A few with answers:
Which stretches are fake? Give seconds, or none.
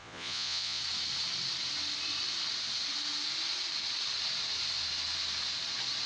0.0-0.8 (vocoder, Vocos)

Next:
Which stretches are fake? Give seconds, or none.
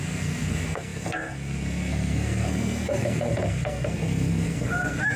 0.0-5.2 (codec, SNAC)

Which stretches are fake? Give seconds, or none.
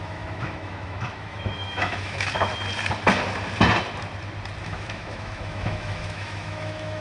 0.0-2.5 (autoencoder, DAC-VAE); 4.6-7.0